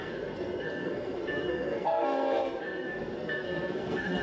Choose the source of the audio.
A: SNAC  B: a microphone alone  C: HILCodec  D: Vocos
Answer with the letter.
A